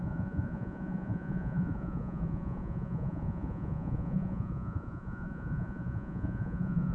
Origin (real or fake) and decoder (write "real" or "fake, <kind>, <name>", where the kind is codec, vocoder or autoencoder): fake, vocoder, Vocos